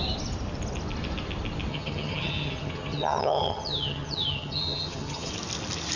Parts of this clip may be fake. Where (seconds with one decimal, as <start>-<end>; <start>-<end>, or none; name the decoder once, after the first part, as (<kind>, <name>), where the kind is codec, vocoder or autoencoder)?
1.7-5.3 (vocoder, HiFi-GAN)